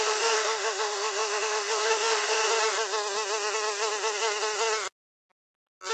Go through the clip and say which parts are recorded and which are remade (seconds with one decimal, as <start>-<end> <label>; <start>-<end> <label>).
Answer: 0.0-2.4 remade; 2.4-5.9 recorded